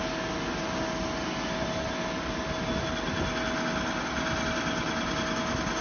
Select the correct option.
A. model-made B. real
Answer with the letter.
B